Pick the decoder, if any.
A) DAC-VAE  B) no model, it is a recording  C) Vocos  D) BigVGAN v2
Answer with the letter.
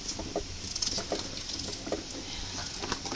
B